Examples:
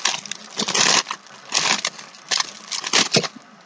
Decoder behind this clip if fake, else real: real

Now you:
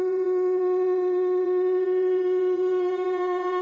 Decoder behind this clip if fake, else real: fake, vocoder, WaveNeXt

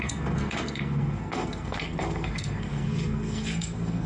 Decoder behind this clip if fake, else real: fake, codec, SNAC